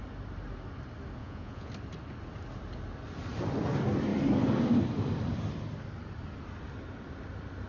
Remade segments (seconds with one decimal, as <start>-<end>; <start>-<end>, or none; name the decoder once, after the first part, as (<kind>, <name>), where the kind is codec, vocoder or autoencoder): 1.2-1.7 (vocoder, Vocos)